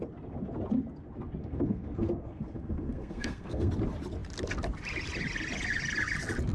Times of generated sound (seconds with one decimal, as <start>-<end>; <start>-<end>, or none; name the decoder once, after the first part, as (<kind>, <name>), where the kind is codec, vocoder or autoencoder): 1.4-3.7 (codec, SNAC)